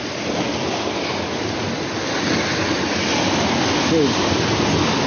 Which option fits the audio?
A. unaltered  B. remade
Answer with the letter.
A